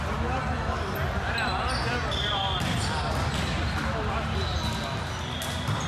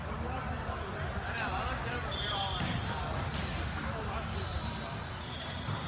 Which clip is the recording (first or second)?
first